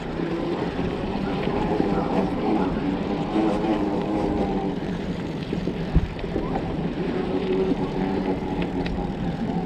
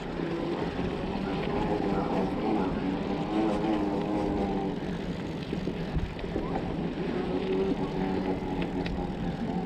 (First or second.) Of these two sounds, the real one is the second